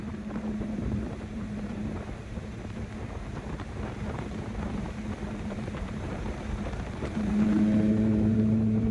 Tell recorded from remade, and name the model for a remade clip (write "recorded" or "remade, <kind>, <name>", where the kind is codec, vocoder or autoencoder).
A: remade, vocoder, BigVGAN v2